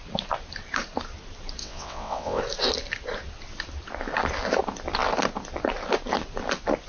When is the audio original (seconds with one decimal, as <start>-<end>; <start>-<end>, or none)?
0.0-1.6; 2.4-6.9